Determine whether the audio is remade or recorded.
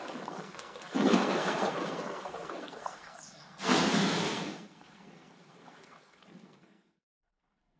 remade